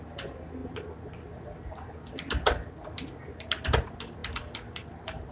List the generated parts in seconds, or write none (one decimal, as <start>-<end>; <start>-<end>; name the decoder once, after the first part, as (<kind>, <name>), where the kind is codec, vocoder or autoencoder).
none